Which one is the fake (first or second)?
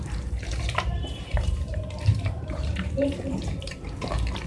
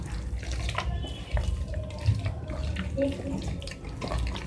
first